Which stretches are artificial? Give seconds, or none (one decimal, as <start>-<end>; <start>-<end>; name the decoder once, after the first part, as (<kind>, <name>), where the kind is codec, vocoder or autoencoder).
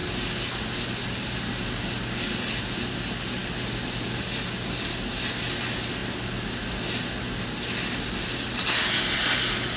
none